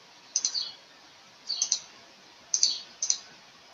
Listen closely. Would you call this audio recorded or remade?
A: remade